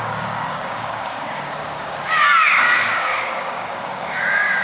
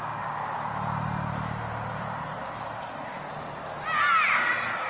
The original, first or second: second